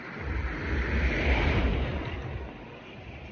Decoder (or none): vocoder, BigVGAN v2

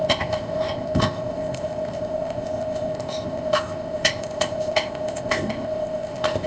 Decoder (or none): codec, ZipCodec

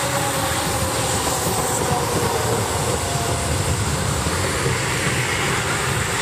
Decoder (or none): none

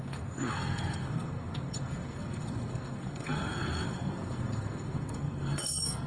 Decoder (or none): codec, SNAC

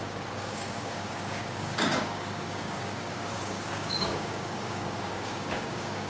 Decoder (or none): codec, DAC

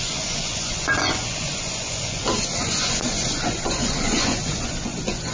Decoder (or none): vocoder, Vocos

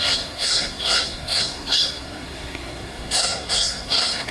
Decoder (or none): codec, SNAC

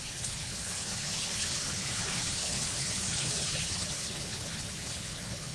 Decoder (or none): codec, HILCodec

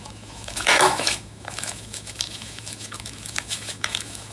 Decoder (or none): autoencoder, DAC-VAE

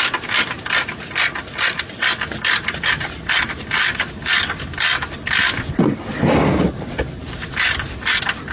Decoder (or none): none